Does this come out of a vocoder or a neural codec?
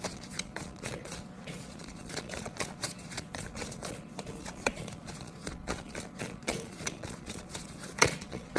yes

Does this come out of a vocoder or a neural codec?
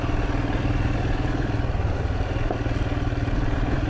no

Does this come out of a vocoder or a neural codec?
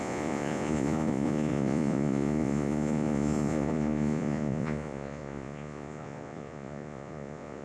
yes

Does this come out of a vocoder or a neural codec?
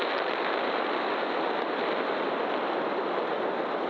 no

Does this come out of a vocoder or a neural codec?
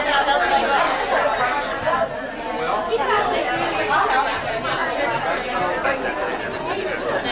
no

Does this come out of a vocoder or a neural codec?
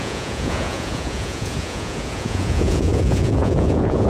yes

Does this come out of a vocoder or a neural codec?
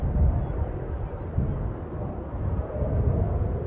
no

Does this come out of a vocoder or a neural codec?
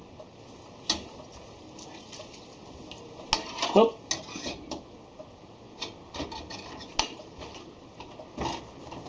no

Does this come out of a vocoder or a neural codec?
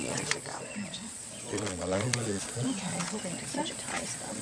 yes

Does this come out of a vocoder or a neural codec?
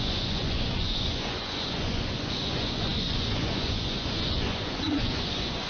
yes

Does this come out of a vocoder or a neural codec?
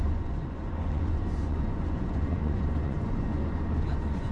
yes